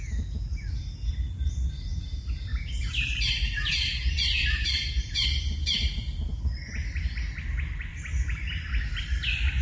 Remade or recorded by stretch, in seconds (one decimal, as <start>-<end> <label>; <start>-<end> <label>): 0.0-2.5 recorded; 2.5-3.7 remade; 3.7-4.4 recorded; 4.4-5.4 remade; 5.4-7.9 recorded; 7.9-8.7 remade; 8.7-9.6 recorded